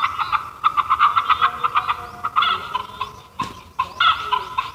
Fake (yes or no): no